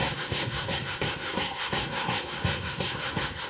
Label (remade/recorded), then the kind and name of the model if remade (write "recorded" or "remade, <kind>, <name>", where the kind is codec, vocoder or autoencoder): remade, codec, SNAC